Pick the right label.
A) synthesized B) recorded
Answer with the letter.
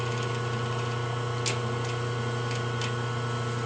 B